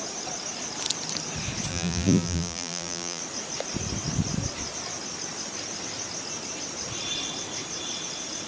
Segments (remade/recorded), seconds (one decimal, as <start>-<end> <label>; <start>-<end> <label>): 0.0-1.7 recorded; 1.7-3.2 remade; 3.2-8.5 recorded